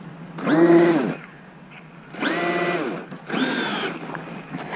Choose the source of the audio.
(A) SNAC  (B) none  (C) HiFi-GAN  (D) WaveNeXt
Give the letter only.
B